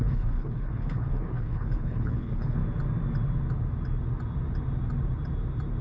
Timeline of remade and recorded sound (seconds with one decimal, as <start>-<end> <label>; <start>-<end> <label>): 0.0-2.6 remade; 2.6-5.8 recorded